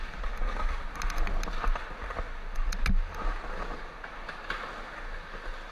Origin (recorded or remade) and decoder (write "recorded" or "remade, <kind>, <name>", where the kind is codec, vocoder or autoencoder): recorded